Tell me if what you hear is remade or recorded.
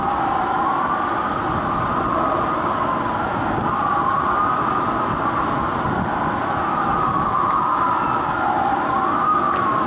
recorded